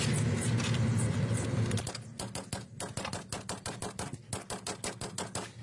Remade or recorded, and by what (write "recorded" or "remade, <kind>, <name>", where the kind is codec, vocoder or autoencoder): recorded